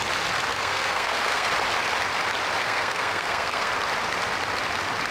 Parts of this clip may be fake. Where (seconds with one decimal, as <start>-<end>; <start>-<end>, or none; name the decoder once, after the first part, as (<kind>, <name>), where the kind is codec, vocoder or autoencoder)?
0.5-1.5 (codec, SNAC); 2.6-3.7